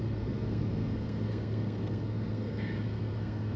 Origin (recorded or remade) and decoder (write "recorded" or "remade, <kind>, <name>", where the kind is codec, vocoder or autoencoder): remade, codec, SNAC